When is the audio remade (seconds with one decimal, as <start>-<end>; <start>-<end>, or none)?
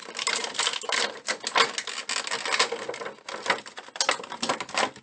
none